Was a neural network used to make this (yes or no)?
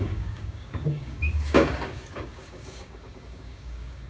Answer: yes